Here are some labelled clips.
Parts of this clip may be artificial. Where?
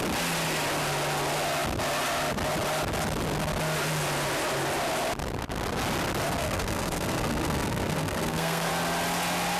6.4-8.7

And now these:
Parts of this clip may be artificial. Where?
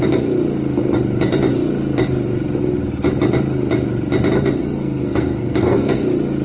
4.6-6.0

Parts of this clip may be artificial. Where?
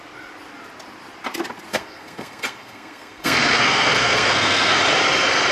1.7-4.8